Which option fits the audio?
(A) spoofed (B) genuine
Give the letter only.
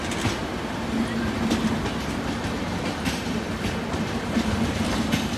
B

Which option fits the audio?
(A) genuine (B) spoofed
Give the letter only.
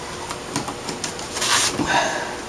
A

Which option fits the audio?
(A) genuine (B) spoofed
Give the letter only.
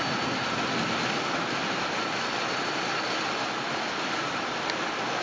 A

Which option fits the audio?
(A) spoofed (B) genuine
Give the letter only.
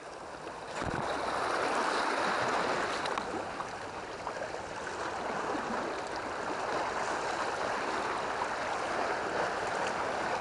B